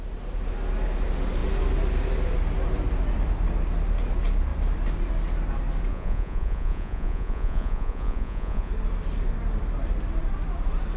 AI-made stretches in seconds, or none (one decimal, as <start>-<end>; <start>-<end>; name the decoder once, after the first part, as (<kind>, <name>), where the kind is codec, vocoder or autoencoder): 5.9-8.7 (vocoder, Vocos)